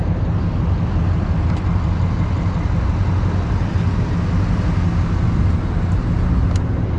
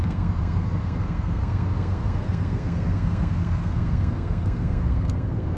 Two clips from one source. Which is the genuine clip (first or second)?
first